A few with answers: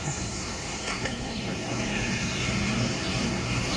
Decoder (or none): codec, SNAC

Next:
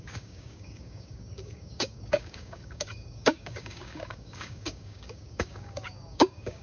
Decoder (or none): codec, DAC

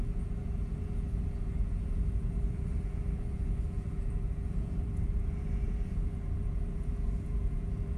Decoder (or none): vocoder, Vocos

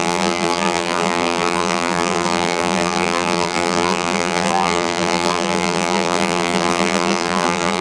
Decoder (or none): vocoder, BigVGAN v2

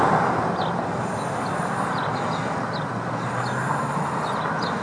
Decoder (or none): none